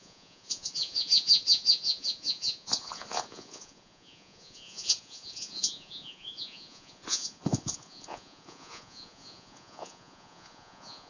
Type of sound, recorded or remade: remade